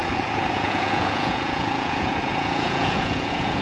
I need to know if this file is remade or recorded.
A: remade